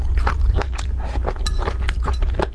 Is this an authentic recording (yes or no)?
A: no